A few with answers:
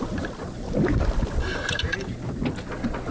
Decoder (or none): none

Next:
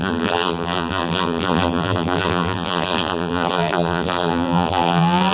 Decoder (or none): vocoder, BigVGAN v2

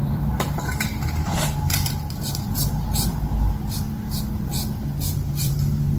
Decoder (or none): vocoder, BigVGAN v2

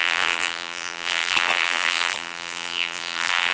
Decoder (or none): vocoder, BigVGAN v2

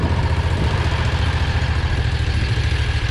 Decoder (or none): none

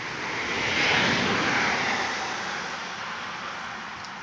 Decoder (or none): none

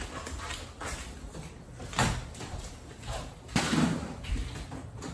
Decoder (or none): vocoder, BigVGAN v2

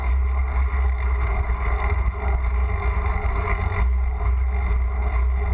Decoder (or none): none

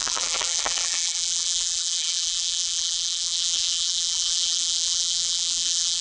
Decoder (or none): vocoder, BigVGAN v2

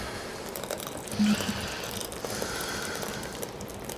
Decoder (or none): none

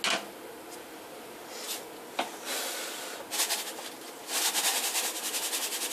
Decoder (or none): none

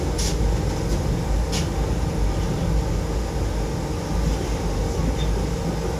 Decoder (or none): none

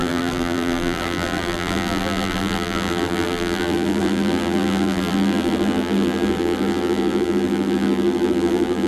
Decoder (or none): vocoder, BigVGAN v2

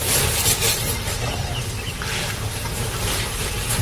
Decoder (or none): vocoder, BigVGAN v2